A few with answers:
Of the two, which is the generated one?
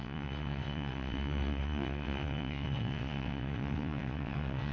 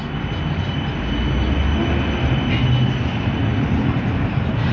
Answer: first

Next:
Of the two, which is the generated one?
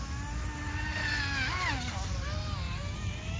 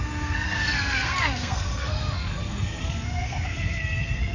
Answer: second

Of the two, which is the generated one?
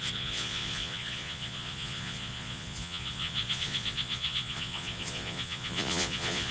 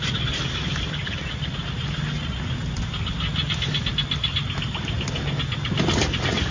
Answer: first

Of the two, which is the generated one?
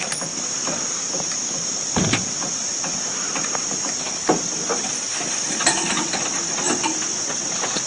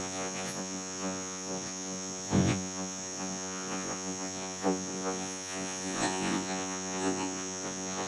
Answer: second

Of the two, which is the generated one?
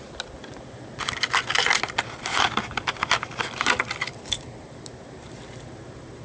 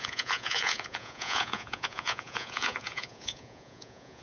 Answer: second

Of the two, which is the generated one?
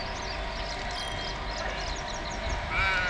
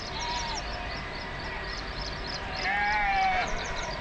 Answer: second